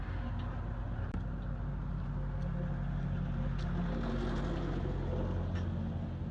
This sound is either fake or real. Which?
real